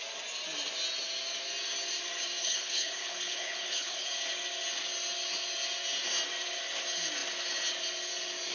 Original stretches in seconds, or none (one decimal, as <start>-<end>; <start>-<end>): 0.0-2.4; 4.1-8.5